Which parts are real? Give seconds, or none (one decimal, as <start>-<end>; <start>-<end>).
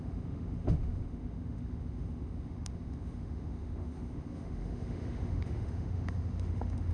none